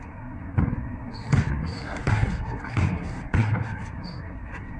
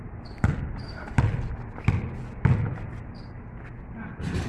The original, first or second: second